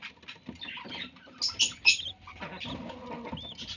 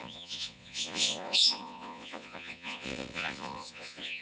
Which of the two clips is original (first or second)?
first